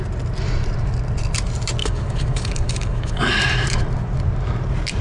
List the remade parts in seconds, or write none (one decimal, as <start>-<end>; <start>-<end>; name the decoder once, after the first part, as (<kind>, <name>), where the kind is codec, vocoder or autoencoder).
1.8-3.2 (codec, DAC)